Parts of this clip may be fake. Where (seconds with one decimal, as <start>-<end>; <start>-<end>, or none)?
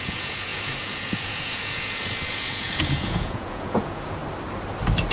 0.0-4.2